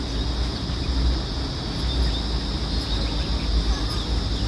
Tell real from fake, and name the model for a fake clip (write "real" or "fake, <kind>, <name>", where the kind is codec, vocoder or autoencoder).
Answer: real